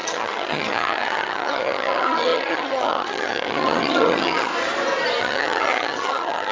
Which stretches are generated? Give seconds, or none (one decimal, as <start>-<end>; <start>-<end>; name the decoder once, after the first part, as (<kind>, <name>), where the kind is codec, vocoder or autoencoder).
0.0-4.5 (vocoder, HiFi-GAN); 5.2-6.5